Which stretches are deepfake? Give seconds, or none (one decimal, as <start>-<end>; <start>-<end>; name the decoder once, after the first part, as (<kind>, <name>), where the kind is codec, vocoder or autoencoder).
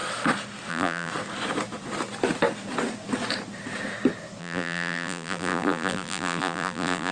0.7-1.1 (vocoder, BigVGAN v2); 4.4-7.1